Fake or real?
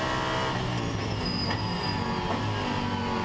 real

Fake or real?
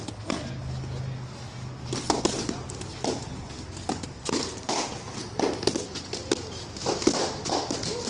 real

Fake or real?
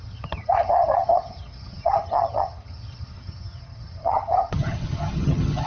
fake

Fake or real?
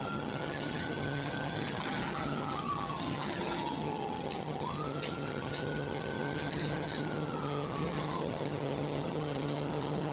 fake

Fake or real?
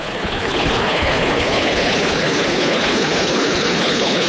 fake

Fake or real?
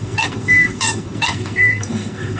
fake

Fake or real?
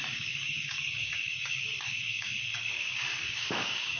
fake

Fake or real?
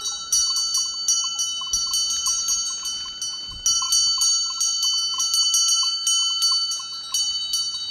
real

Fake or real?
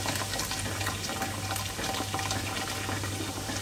real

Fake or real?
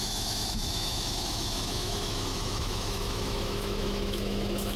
fake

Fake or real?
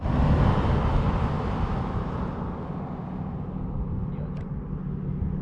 real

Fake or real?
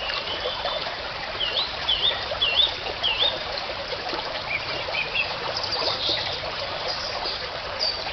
fake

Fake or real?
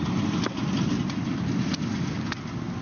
real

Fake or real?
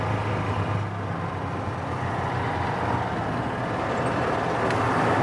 real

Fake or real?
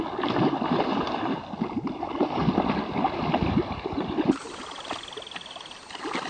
real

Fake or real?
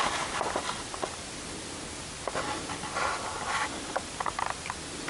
real